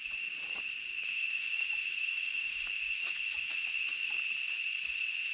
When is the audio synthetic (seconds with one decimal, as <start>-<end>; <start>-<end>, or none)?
0.9-4.1